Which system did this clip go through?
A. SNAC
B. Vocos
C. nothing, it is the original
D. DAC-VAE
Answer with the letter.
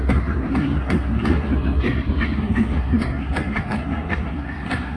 A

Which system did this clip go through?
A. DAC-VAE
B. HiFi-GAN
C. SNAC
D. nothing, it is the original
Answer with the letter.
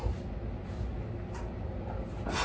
D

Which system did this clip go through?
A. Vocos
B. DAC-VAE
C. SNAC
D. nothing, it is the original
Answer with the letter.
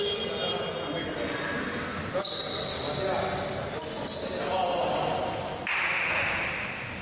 D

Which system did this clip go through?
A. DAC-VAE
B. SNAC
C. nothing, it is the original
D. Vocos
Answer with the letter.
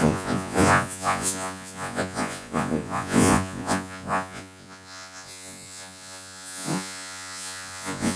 D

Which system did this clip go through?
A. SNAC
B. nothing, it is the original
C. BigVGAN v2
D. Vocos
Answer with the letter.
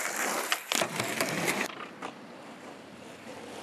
C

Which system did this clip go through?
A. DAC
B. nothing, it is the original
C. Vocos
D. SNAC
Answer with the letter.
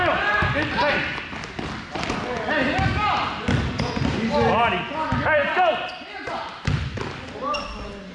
B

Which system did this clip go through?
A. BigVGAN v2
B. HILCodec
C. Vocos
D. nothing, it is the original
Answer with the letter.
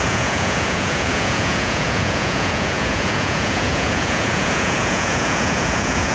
C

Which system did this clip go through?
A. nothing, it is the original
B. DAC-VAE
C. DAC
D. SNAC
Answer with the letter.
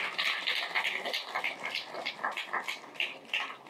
A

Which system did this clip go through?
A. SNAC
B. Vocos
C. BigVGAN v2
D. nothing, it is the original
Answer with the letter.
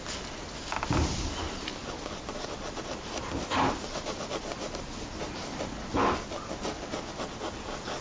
D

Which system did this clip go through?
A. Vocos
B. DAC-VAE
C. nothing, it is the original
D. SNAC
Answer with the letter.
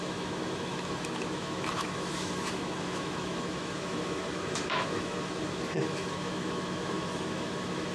B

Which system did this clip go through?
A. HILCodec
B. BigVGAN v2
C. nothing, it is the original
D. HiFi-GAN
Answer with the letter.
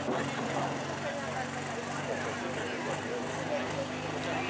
C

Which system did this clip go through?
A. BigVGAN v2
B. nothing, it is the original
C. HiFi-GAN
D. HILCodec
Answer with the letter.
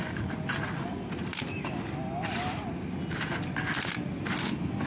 B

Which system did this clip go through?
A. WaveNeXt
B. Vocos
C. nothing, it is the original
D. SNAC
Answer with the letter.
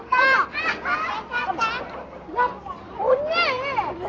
C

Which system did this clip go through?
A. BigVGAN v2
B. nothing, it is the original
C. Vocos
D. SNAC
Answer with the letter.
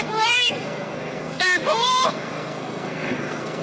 D